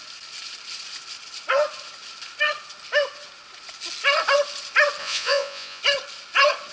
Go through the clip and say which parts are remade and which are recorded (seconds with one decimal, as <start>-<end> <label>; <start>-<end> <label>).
0.0-5.0 recorded; 5.0-5.8 remade; 5.8-6.7 recorded